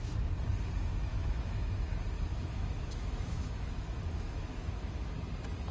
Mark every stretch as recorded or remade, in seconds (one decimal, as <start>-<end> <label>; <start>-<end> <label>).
0.0-1.1 recorded; 1.1-1.9 remade; 1.9-2.3 recorded; 2.3-5.1 remade; 5.1-5.7 recorded